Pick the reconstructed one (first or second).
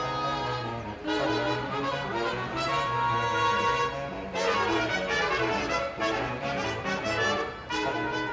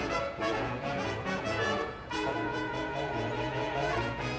second